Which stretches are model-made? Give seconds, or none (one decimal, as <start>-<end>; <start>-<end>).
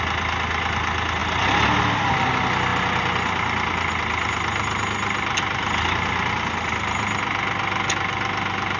none